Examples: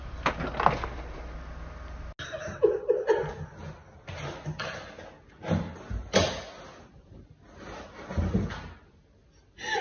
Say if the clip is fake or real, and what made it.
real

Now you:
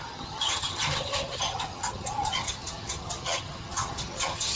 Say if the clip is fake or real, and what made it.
fake, vocoder, HiFi-GAN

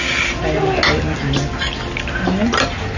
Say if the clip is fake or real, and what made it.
real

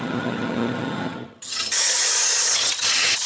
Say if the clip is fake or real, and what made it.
fake, vocoder, HiFi-GAN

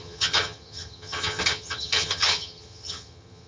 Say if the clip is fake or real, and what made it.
fake, vocoder, HiFi-GAN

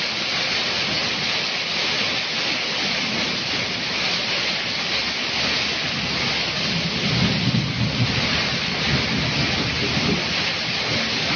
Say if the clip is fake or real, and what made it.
real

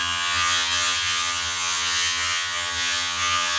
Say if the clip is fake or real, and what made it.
fake, vocoder, HiFi-GAN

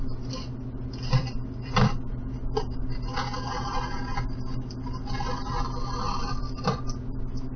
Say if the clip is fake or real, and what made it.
real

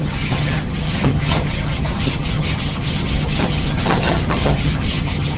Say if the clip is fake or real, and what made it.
fake, vocoder, HiFi-GAN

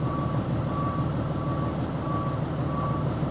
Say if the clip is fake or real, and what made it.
real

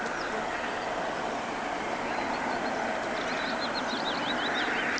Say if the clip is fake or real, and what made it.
real